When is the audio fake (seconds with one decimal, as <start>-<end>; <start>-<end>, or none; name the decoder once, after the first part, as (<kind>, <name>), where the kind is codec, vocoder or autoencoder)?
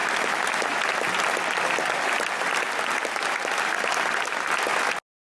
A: none